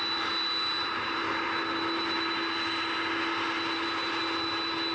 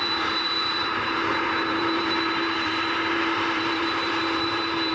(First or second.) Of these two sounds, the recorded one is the first